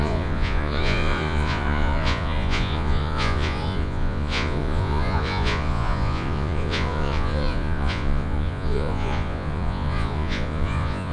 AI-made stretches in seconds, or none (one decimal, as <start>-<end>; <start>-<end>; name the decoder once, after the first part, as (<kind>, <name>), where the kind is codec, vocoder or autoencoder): 0.0-11.1 (vocoder, Vocos)